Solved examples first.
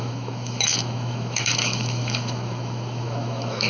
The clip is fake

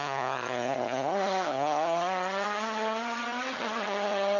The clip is fake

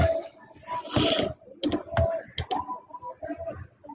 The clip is real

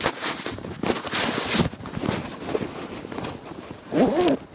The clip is real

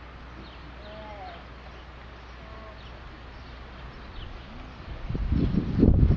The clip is real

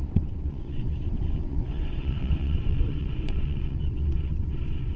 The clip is fake